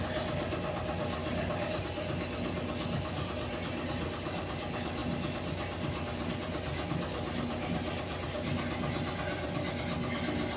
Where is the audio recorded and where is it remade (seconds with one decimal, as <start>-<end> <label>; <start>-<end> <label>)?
0.0-10.6 recorded